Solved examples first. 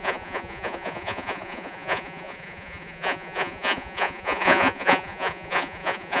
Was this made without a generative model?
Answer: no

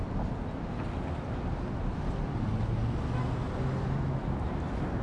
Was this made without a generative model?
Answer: yes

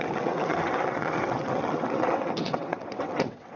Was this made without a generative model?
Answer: no